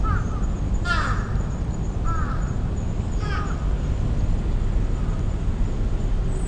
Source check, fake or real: real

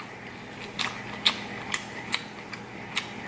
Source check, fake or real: real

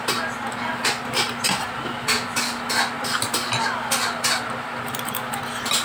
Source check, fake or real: real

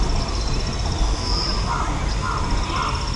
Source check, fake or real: real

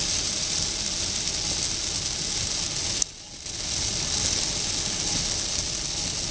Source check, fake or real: real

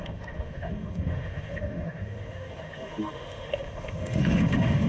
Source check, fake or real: fake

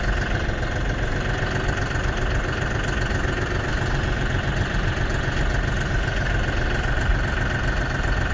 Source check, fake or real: real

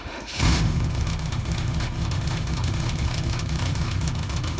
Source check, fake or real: fake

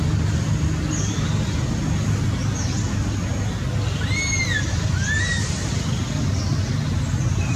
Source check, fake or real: real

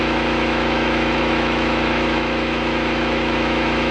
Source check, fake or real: fake